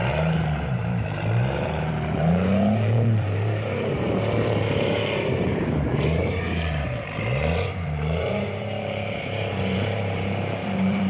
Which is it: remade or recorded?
remade